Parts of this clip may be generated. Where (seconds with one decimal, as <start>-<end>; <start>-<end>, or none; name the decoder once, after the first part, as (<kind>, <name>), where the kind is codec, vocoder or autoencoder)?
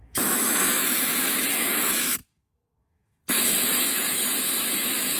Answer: 0.0-5.2 (autoencoder, DAC-VAE)